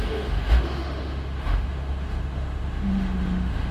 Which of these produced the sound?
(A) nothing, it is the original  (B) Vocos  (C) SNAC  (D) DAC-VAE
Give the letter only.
D